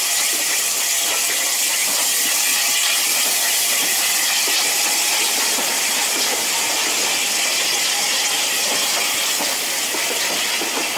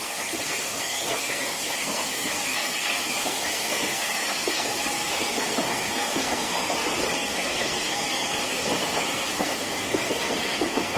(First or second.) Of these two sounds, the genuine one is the first